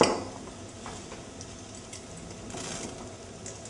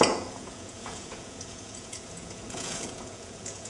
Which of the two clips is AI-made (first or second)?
second